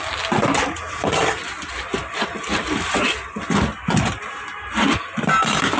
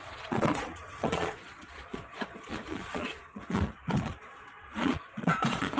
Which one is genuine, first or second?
first